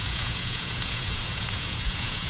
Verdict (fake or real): fake